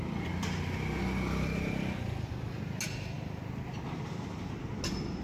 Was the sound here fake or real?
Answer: real